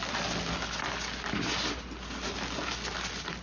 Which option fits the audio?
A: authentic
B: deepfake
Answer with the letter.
A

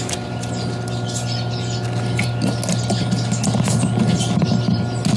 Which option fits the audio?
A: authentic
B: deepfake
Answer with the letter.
A